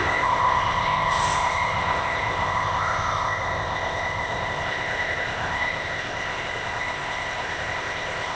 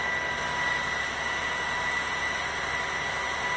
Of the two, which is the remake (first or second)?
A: first